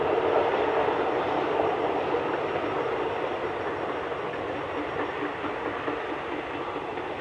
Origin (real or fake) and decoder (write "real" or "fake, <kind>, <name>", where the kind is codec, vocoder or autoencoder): real